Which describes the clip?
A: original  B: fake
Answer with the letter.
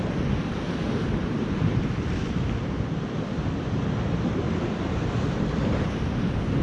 B